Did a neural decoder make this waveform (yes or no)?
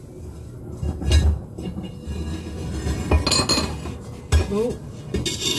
no